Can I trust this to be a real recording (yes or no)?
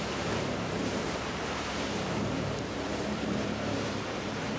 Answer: no